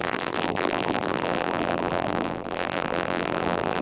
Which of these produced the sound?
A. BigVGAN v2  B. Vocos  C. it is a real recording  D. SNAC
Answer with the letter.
A